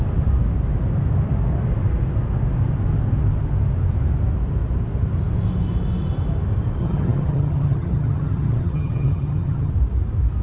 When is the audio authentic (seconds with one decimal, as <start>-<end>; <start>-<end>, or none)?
0.0-6.8; 9.7-10.4